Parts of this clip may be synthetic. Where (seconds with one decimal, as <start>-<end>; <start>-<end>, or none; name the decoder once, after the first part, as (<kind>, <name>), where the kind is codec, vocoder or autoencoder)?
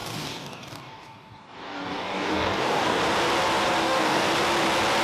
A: 0.0-3.0 (codec, DAC); 3.8-4.3